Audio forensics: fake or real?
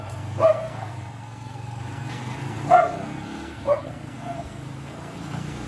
fake